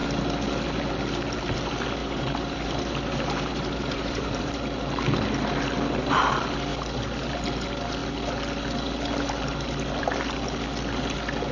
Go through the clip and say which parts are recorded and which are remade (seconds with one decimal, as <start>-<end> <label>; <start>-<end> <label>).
0.0-2.0 recorded; 2.0-4.5 remade; 4.5-11.5 recorded